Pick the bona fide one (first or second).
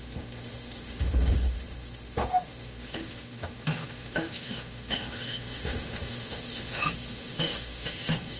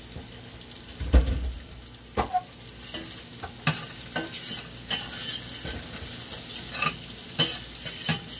second